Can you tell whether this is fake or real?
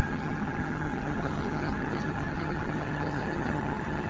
fake